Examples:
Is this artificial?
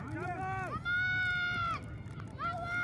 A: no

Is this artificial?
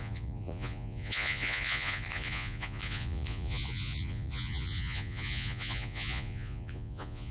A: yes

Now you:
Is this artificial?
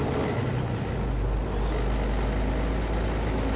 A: no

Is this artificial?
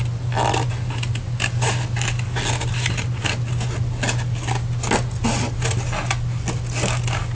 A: no